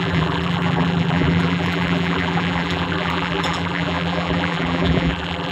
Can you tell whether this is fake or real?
fake